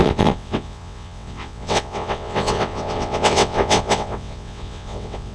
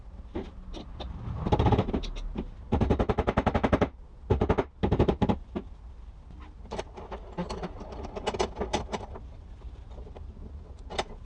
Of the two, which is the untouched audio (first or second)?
second